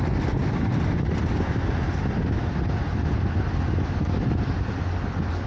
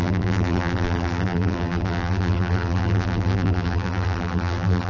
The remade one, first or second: second